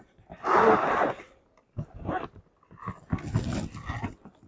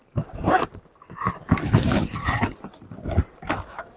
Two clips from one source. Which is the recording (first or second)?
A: first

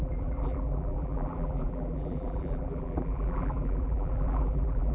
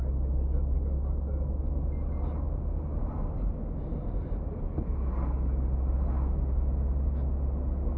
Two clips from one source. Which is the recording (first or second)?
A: second